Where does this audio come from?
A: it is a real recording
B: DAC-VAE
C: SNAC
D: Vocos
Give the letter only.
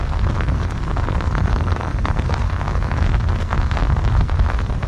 C